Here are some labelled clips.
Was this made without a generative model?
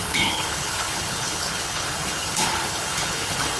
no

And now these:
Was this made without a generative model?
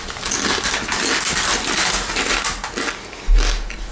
yes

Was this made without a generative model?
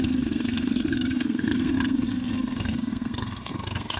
no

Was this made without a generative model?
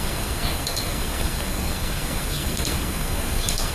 no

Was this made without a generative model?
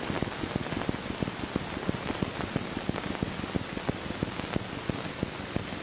yes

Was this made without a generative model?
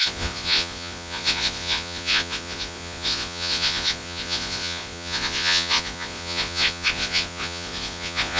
no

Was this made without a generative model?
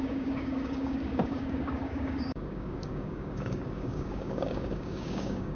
no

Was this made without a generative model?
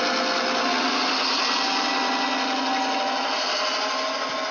yes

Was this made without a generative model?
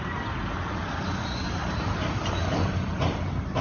yes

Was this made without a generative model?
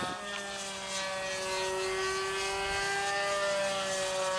yes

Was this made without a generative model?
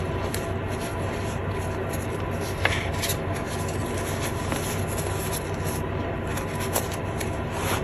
yes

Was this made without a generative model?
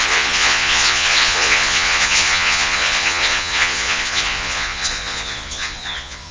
no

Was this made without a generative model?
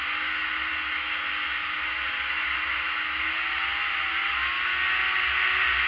yes